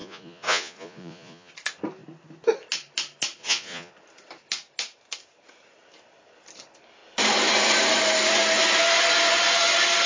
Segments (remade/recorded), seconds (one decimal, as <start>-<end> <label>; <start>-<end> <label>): 0.0-1.5 remade; 1.5-3.4 recorded; 3.4-3.9 remade; 3.9-10.1 recorded